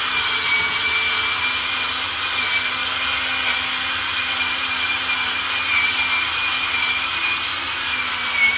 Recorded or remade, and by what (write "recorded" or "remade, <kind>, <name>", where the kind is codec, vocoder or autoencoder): recorded